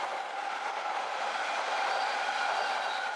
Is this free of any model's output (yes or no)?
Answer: yes